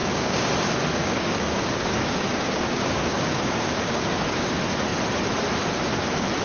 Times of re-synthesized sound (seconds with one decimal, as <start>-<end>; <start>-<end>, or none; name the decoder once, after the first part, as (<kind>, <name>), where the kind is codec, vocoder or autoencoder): 0.0-0.5 (codec, DAC); 1.0-4.4

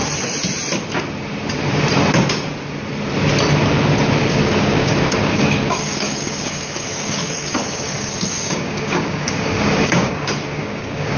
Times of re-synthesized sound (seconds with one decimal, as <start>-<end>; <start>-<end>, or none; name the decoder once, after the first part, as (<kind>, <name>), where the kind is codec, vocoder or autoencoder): 4.3-11.2 (codec, DAC)

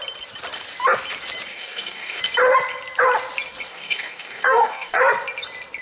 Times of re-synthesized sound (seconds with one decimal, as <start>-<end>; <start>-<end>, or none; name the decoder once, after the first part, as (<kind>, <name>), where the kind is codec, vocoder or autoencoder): 1.5-2.2 (codec, DAC); 3.7-5.0